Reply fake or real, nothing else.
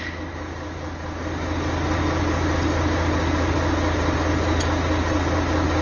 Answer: real